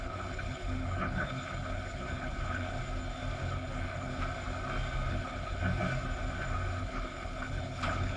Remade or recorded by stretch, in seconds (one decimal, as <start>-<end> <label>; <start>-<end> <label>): 0.0-2.8 remade; 2.8-3.4 recorded; 3.4-4.1 remade; 4.1-5.1 recorded; 5.1-5.6 remade; 5.6-6.8 recorded; 6.8-8.2 remade